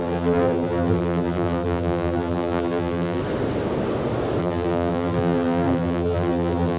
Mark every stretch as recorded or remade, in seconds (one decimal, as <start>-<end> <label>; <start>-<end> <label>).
0.0-3.2 remade; 3.2-4.4 recorded; 4.4-6.8 remade